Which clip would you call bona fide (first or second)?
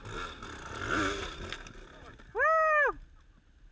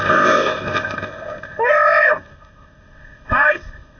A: first